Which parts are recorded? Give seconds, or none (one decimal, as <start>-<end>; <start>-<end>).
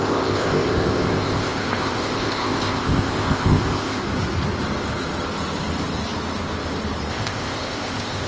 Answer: 4.0-7.1